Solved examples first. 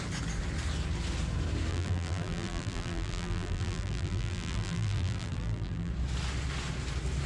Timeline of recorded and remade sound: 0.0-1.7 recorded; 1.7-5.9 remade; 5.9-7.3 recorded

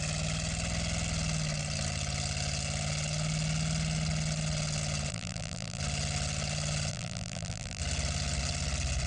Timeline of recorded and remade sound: 0.0-5.1 recorded; 5.1-5.8 remade; 5.8-6.9 recorded; 6.9-7.8 remade; 7.8-9.1 recorded

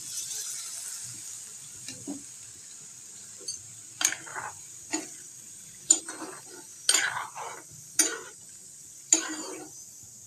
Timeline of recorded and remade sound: 0.0-1.1 recorded; 1.1-2.1 remade; 2.1-4.3 recorded; 4.3-6.0 remade; 6.0-10.3 recorded

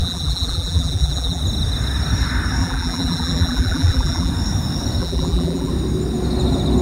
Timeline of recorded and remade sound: 0.0-1.4 remade; 1.4-2.6 recorded; 2.6-4.3 remade; 4.3-5.0 recorded; 5.0-5.7 remade; 5.7-6.8 recorded